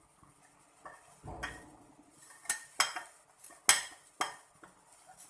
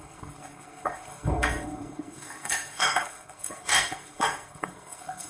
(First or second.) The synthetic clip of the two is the second